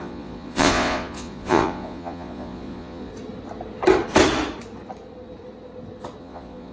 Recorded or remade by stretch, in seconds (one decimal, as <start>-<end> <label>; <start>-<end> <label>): 0.0-3.1 remade; 3.1-6.2 recorded; 6.2-6.7 remade